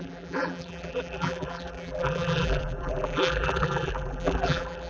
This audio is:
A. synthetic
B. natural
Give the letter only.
A